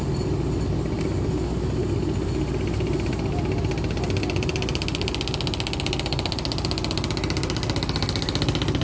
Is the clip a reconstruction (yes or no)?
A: no